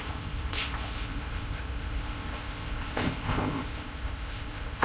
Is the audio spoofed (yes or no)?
yes